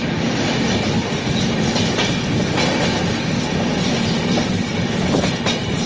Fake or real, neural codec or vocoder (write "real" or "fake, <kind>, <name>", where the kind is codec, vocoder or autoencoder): real